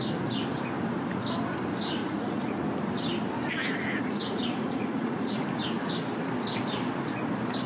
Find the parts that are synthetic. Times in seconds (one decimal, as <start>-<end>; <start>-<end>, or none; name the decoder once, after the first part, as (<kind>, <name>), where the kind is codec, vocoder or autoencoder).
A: 2.0-2.6 (vocoder, Vocos); 3.6-5.4